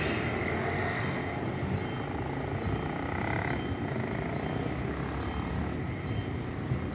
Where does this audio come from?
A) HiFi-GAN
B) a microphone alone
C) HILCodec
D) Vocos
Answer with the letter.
B